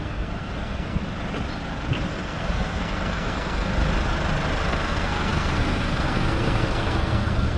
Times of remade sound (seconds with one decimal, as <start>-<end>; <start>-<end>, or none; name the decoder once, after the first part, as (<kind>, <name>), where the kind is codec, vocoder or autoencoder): 0.0-1.0 (codec, SNAC); 2.1-3.7; 4.7-7.6